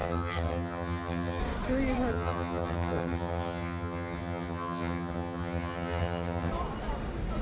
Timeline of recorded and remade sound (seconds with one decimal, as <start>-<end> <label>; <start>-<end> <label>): 0.0-1.4 remade; 1.4-2.1 recorded; 2.1-6.5 remade; 6.5-7.4 recorded